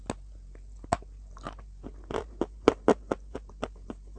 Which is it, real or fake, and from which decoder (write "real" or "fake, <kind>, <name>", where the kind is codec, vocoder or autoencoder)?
real